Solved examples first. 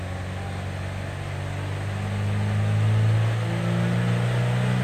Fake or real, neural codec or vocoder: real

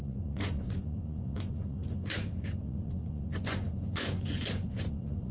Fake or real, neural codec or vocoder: fake, vocoder, Vocos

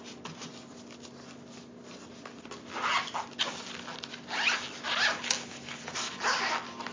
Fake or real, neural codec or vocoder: real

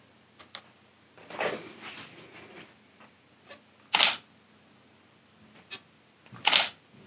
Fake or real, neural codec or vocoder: real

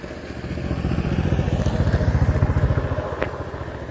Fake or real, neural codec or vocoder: real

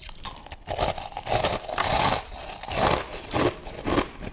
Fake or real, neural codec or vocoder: real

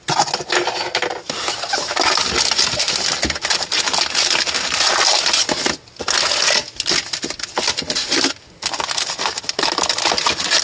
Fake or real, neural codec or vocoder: real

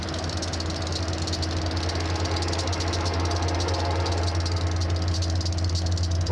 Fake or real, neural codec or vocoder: real